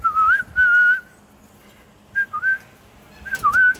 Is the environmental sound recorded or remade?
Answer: recorded